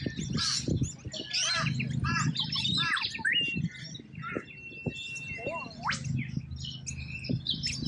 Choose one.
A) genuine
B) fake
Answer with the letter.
A